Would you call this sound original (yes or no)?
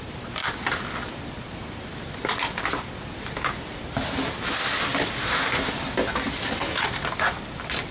yes